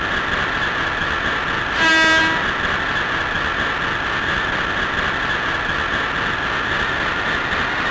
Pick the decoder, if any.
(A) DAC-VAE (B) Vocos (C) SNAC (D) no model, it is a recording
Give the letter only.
D